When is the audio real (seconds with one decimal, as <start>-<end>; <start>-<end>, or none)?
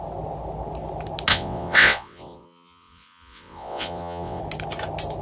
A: 0.0-1.3; 4.4-5.2